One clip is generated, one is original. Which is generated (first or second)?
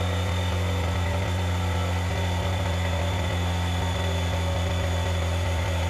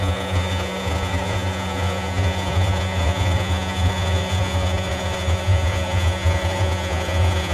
second